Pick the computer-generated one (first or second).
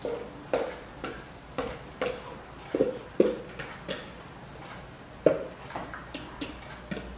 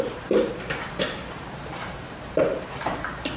second